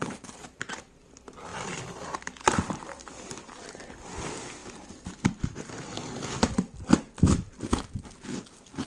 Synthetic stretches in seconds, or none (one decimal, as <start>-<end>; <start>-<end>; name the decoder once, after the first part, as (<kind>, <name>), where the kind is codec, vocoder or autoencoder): 1.5-3.9 (vocoder, BigVGAN v2)